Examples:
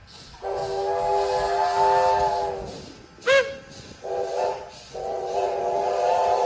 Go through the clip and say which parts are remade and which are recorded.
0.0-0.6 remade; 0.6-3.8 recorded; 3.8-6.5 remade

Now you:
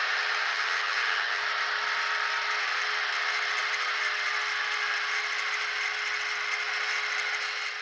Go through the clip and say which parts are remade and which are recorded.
0.0-0.5 recorded; 0.5-1.4 remade; 1.4-7.8 recorded

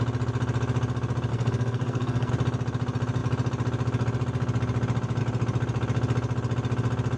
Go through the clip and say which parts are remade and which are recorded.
0.0-1.3 recorded; 1.3-2.3 remade; 2.3-7.2 recorded